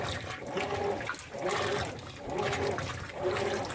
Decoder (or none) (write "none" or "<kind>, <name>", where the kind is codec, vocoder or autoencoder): none